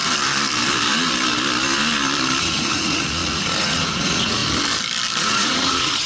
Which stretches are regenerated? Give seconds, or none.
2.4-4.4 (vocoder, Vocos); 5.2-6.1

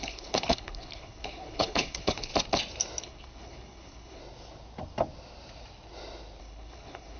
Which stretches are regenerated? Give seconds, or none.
0.0-2.3 (codec, HILCodec); 3.0-4.2; 6.4-7.2